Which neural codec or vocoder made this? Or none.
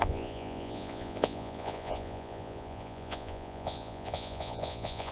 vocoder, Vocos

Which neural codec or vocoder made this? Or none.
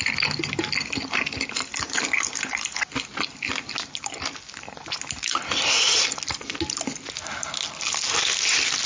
none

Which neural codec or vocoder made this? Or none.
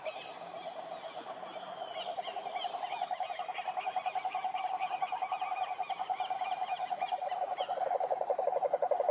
none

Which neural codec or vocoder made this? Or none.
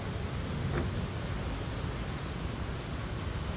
none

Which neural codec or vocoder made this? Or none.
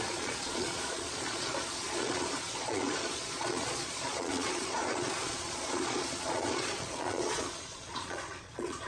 vocoder, Vocos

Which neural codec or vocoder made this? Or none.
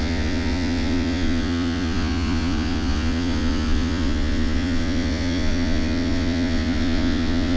vocoder, Vocos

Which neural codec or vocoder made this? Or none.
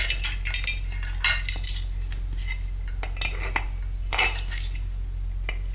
none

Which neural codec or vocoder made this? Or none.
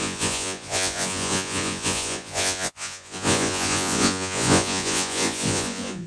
vocoder, Vocos